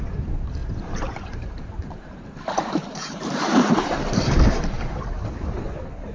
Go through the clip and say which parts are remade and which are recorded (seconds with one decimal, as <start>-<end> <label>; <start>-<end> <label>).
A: 0.0-0.6 recorded; 0.6-4.3 remade; 4.3-6.1 recorded